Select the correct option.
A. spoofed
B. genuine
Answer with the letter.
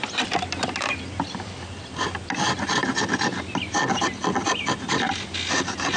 B